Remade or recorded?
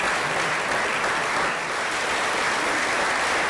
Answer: recorded